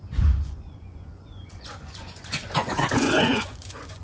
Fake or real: fake